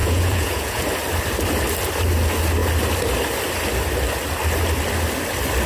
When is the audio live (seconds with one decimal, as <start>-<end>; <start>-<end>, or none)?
0.9-5.7